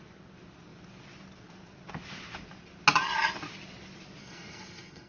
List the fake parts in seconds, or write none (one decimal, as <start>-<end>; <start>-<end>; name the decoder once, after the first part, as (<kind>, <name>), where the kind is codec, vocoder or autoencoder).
4.2-5.1 (codec, SNAC)